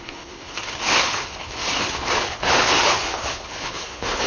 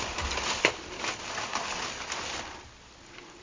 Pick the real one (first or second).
second